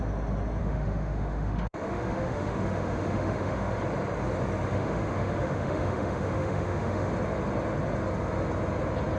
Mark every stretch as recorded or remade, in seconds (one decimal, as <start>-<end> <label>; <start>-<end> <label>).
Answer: 0.0-0.6 recorded; 0.6-3.8 remade; 3.8-4.7 recorded; 4.7-7.1 remade; 7.1-9.2 recorded

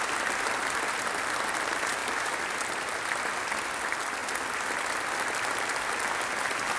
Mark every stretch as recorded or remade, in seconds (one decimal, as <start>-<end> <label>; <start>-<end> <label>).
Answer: 0.0-6.8 recorded

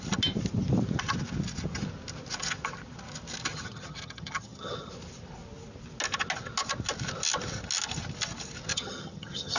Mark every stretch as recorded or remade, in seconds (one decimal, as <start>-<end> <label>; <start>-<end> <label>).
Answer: 0.0-3.5 recorded; 3.5-4.9 remade; 4.9-8.7 recorded; 8.7-9.6 remade

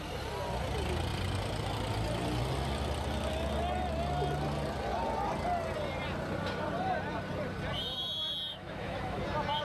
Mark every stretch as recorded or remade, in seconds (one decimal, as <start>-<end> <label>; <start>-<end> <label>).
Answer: 0.0-8.5 recorded; 8.5-9.2 remade; 9.2-9.6 recorded

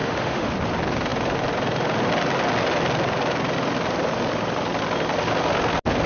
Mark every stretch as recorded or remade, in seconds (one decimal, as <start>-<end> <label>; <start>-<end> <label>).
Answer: 0.0-0.5 remade; 0.5-6.1 recorded